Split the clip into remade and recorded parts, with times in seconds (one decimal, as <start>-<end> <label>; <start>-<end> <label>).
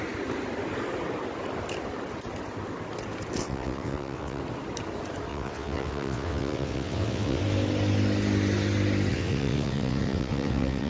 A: 0.0-3.4 recorded; 3.4-4.4 remade; 4.4-5.3 recorded; 5.3-7.4 remade; 7.4-9.1 recorded; 9.1-10.9 remade